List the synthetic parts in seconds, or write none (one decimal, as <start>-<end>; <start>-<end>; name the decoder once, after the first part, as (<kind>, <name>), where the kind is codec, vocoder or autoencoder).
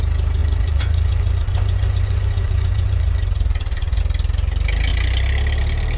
0.4-4.0 (vocoder, Vocos)